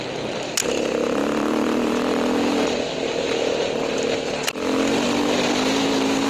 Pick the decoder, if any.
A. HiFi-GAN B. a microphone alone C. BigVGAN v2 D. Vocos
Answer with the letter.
B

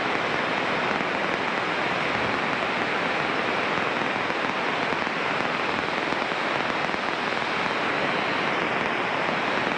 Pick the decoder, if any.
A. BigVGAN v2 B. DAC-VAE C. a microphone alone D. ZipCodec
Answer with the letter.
C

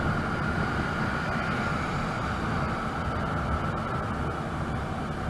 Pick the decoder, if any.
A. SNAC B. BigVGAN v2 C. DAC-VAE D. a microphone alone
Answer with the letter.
D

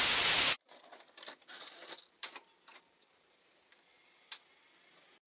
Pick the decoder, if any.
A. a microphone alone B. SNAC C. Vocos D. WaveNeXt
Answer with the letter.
A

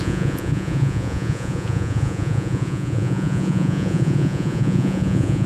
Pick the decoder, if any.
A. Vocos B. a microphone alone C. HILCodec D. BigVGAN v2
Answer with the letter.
A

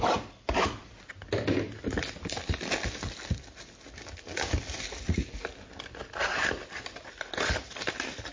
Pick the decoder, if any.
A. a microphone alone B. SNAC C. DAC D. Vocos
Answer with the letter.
A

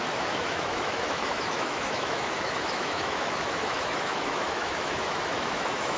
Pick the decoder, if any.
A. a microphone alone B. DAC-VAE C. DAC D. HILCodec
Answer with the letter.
B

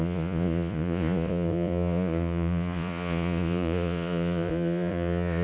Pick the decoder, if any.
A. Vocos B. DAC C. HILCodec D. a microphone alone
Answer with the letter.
A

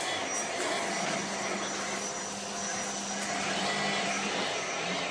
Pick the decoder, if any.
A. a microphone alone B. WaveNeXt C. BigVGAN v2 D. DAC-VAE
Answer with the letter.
A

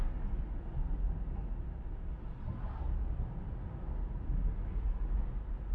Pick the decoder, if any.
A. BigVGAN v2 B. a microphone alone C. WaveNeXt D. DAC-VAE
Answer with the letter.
B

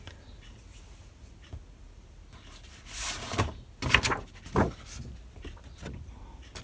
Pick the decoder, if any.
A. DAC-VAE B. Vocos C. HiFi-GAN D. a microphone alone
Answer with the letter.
D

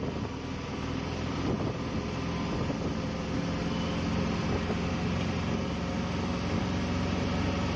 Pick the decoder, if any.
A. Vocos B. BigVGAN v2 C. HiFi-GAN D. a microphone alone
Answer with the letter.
D